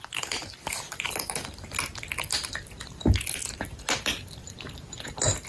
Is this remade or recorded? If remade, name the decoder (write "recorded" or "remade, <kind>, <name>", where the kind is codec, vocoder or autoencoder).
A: recorded